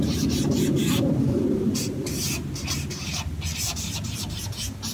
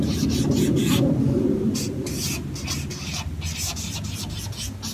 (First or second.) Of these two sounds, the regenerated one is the first